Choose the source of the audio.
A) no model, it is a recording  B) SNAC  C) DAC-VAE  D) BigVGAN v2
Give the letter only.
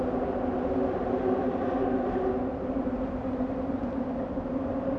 A